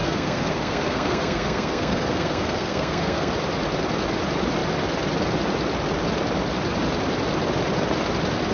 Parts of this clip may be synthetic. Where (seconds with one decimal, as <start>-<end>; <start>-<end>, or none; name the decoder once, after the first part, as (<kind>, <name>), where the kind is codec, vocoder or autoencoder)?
0.0-3.3 (codec, SNAC)